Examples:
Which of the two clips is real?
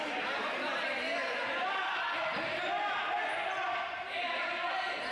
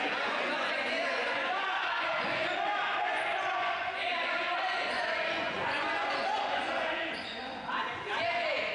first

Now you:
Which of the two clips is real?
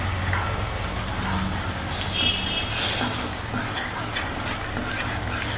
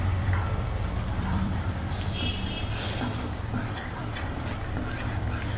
first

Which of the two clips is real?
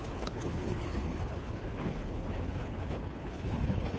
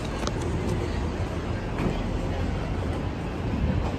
second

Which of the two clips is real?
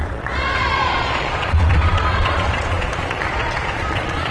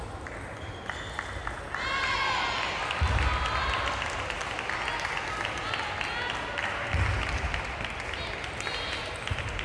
second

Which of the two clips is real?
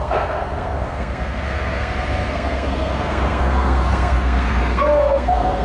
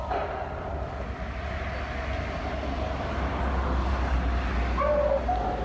second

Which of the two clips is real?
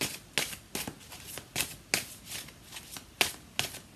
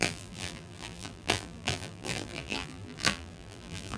first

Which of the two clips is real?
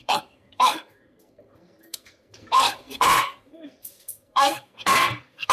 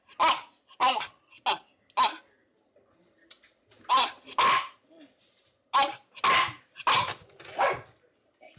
second